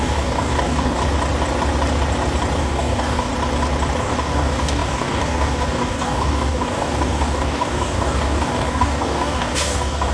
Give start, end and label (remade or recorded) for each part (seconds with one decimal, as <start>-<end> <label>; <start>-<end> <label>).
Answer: 0.0-1.0 remade; 1.0-2.6 recorded; 2.6-3.3 remade; 3.3-4.0 recorded; 4.0-10.1 remade